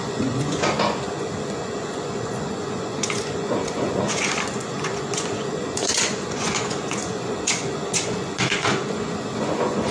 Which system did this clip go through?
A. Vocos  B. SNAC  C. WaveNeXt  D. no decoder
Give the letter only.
A